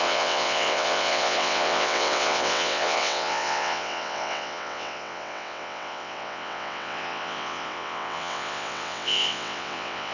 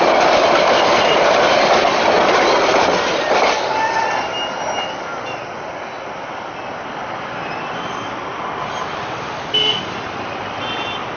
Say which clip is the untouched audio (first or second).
second